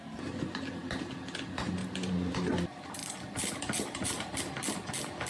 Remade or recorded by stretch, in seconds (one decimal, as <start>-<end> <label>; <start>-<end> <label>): 0.0-1.8 recorded; 1.8-2.3 remade; 2.3-3.0 recorded; 3.0-4.4 remade; 4.4-5.3 recorded